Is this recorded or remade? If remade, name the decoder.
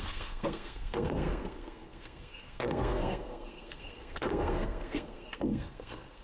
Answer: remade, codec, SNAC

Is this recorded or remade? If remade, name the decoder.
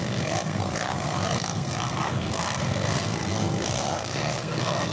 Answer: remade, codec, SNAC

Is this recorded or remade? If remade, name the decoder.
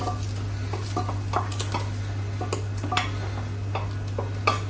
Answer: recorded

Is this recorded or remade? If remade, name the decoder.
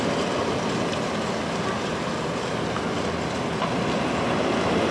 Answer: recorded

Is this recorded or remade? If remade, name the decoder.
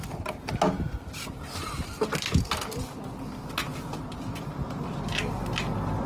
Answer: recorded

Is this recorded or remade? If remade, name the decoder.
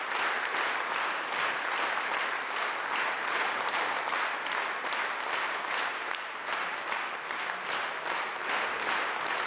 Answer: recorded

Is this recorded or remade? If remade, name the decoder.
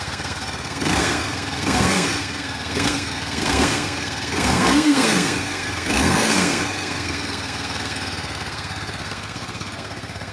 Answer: remade, codec, SNAC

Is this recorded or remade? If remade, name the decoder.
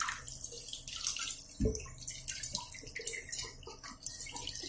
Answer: recorded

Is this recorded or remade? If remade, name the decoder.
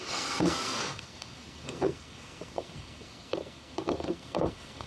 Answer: remade, codec, SNAC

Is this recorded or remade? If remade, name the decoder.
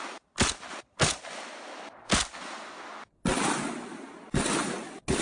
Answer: recorded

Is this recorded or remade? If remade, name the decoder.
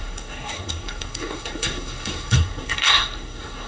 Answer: remade, codec, SNAC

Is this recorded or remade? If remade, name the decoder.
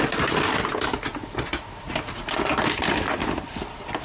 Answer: recorded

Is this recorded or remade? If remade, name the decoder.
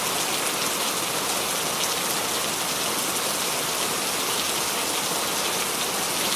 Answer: recorded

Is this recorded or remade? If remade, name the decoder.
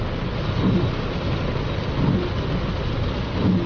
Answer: recorded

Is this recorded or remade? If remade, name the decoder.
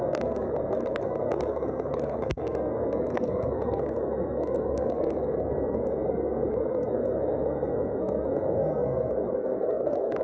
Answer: remade, codec, SNAC